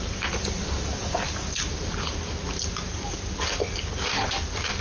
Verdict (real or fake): real